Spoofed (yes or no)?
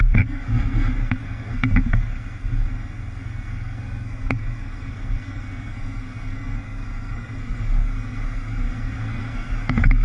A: yes